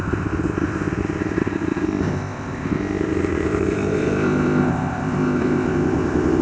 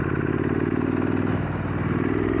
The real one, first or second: second